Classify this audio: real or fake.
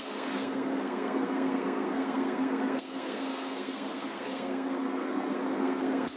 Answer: fake